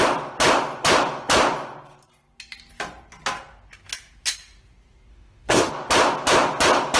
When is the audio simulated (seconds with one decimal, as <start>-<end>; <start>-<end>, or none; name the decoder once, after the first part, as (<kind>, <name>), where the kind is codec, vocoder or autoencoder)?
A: 5.1-5.7 (autoencoder, DAC-VAE)